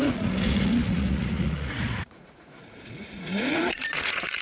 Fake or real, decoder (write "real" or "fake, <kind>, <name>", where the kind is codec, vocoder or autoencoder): fake, vocoder, Vocos